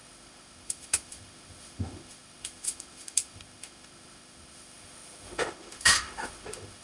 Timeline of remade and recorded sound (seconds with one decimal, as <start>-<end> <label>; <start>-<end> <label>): 0.0-6.8 remade